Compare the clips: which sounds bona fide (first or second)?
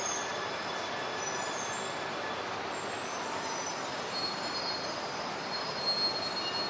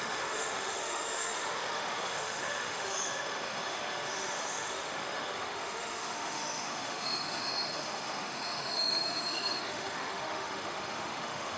first